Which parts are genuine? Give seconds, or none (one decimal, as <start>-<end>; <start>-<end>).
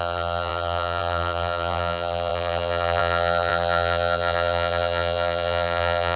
none